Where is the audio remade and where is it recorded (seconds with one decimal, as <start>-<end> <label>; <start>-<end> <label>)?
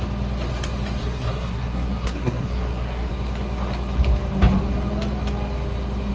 0.0-1.0 recorded; 1.0-3.1 remade; 3.1-6.1 recorded